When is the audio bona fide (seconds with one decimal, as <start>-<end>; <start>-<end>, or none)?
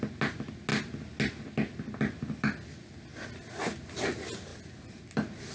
0.0-5.5